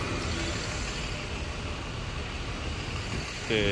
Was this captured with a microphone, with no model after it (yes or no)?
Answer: yes